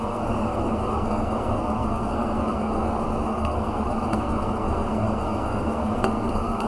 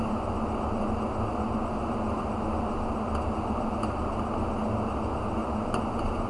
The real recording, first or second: second